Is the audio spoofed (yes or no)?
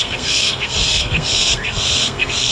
yes